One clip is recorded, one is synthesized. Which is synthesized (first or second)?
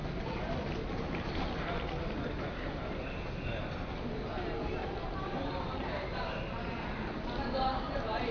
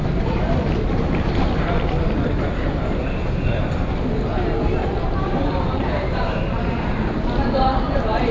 second